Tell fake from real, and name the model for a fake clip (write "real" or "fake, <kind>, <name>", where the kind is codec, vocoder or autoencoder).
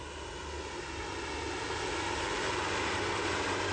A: real